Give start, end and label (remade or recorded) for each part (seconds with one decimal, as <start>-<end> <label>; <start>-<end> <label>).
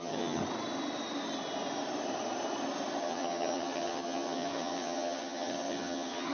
0.0-0.4 remade; 0.4-3.0 recorded; 3.0-6.3 remade